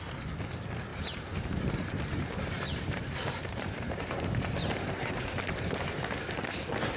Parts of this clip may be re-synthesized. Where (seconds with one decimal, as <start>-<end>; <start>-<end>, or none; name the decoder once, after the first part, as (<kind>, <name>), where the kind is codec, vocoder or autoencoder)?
0.9-5.1 (vocoder, BigVGAN v2)